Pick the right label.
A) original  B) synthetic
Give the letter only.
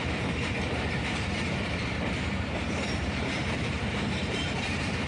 B